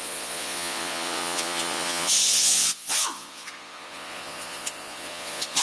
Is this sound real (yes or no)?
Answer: no